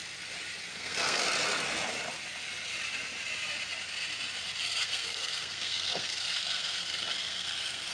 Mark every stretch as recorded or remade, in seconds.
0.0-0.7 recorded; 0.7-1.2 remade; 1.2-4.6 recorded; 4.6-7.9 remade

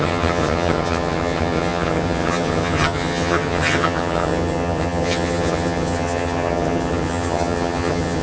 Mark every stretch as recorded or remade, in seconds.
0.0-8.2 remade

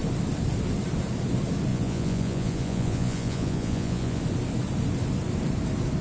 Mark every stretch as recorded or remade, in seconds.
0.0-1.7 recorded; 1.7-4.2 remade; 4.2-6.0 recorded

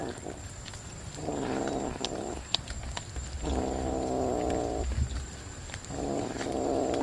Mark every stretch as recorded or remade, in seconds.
0.0-7.0 recorded